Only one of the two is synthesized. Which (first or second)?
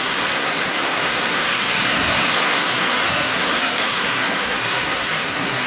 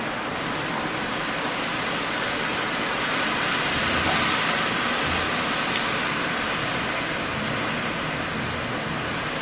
first